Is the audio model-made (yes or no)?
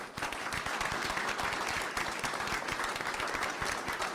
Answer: no